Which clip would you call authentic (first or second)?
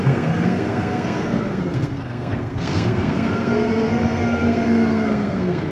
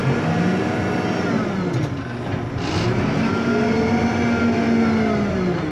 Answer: second